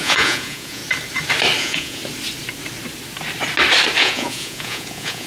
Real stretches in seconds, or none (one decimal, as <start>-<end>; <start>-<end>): 0.8-1.6; 2.0-4.0